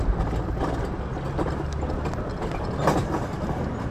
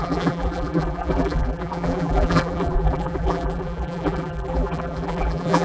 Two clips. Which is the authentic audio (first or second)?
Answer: first